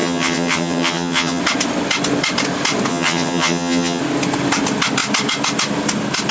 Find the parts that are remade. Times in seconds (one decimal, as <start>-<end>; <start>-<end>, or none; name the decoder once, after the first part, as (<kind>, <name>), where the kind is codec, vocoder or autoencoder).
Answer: 0.0-1.4 (vocoder, HiFi-GAN); 2.9-4.0